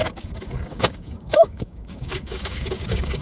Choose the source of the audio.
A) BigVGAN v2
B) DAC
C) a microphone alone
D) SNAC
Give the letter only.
B